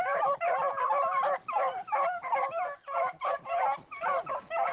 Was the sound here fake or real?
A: real